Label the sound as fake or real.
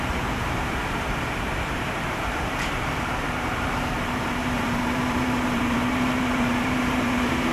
fake